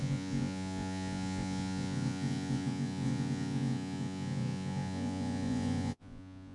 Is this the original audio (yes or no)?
no